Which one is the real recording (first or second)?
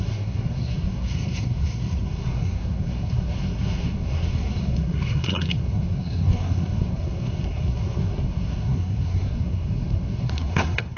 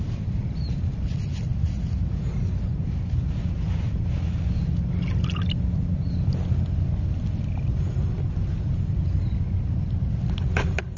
second